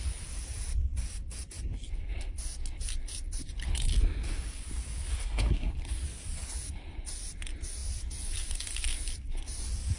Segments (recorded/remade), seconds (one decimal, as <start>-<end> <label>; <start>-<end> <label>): 0.0-5.1 recorded; 5.1-5.7 remade; 5.7-10.0 recorded